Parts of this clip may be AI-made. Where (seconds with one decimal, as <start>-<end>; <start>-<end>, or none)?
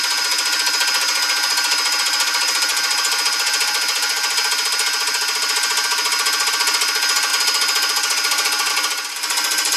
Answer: none